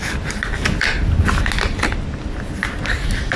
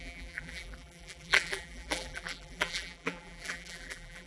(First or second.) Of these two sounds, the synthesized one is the second